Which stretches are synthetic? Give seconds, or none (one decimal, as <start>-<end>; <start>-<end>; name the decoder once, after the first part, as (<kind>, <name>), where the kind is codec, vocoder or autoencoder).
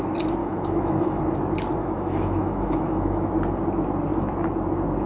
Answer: 0.4-1.2 (autoencoder, DAC-VAE); 1.8-3.3